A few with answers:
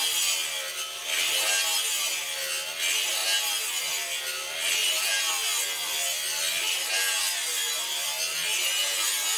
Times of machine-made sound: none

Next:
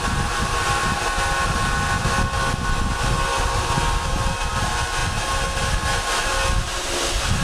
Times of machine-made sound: none

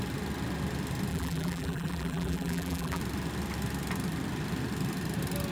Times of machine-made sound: 1.1-3.0 (vocoder, BigVGAN v2)